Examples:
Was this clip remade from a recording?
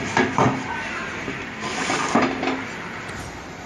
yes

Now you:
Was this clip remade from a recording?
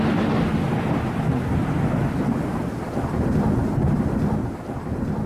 no